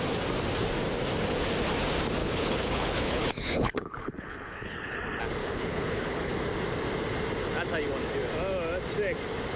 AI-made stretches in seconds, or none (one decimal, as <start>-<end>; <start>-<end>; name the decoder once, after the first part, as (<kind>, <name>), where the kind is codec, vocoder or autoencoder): 2.2-5.0 (codec, HILCodec); 5.4-6.3